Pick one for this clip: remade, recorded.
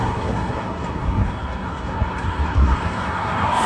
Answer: remade